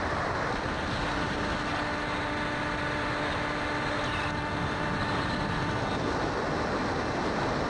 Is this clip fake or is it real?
real